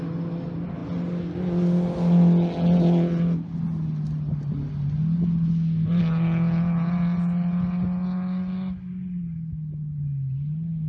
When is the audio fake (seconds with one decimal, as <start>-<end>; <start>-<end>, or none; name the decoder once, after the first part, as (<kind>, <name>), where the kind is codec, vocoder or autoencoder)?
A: none